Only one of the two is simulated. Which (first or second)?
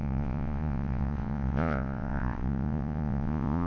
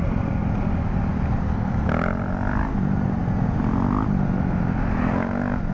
first